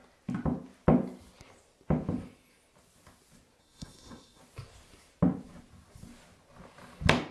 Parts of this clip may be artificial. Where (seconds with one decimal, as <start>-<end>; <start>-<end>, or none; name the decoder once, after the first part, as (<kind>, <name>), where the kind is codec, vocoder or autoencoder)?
3.6-4.4 (codec, SNAC)